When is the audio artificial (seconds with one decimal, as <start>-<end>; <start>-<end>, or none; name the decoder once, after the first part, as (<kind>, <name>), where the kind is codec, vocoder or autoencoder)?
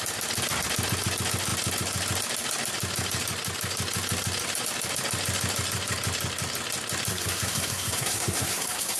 7.1-9.0 (codec, SNAC)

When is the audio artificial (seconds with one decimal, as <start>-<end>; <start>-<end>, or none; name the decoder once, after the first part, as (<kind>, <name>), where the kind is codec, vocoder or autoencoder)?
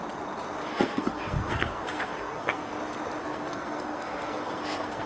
0.7-2.7 (codec, SNAC); 3.2-5.1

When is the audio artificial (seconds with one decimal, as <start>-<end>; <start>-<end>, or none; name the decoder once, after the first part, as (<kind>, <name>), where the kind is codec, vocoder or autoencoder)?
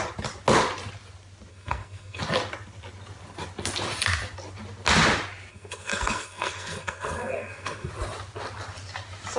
1.5-2.2 (codec, SNAC); 5.5-7.9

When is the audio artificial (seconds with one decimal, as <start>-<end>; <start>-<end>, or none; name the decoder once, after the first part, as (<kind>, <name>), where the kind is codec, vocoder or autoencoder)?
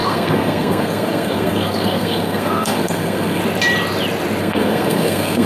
0.0-3.4 (codec, SNAC); 4.4-5.5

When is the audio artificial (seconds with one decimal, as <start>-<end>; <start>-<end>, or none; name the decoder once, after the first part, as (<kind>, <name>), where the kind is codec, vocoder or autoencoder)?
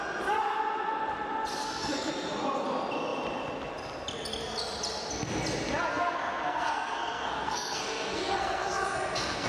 1.6-2.1 (codec, SNAC); 5.9-9.5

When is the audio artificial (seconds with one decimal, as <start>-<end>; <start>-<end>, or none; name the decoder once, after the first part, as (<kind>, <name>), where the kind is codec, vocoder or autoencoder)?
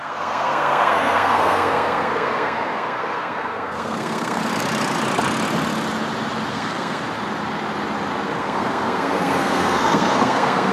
0.0-4.4 (codec, SNAC); 6.5-7.0; 8.4-10.7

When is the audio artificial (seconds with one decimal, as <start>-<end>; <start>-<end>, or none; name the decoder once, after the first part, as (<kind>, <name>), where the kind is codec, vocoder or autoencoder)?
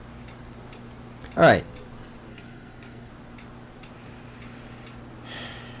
2.3-3.1 (codec, SNAC)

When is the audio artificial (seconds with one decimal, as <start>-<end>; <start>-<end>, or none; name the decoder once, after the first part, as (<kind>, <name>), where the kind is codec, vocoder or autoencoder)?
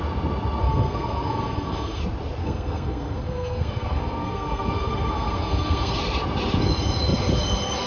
0.6-2.0 (codec, SNAC); 2.4-5.9